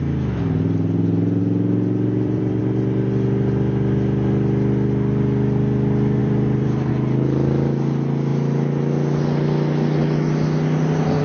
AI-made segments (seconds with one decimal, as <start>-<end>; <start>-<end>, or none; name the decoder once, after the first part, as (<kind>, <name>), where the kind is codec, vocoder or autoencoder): 1.4-2.6 (vocoder, BigVGAN v2); 6.2-6.9